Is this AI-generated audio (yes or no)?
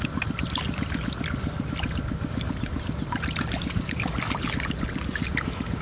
no